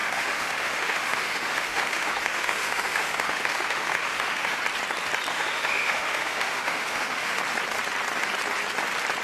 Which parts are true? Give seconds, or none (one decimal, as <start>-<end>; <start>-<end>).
4.6-5.3; 7.4-9.2